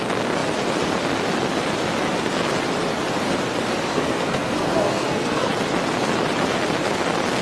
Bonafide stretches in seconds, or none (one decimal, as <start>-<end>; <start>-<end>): 0.0-3.9; 5.5-7.4